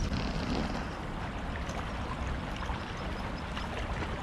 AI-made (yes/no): no